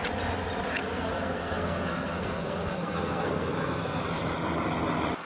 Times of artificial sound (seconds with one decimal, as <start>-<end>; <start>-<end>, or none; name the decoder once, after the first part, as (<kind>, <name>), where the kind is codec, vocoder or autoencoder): 0.8-4.0 (codec, SNAC)